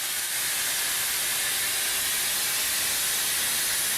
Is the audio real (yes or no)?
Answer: yes